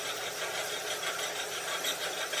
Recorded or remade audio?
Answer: recorded